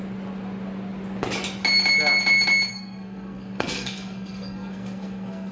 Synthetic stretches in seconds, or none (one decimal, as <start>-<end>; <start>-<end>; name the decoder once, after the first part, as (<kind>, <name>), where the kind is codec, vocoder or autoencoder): 2.7-5.5 (codec, SNAC)